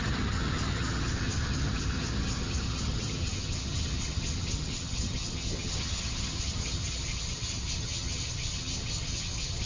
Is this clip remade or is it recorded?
remade